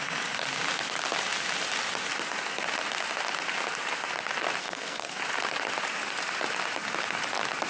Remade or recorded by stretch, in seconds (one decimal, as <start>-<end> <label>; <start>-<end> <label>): 0.0-4.6 recorded; 4.6-5.2 remade; 5.2-7.7 recorded

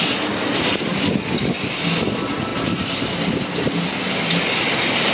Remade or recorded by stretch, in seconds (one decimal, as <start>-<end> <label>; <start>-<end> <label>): 0.0-5.1 recorded

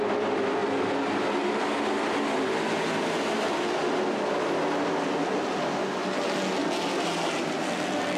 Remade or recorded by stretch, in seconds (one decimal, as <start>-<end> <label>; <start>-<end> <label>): 0.0-8.2 recorded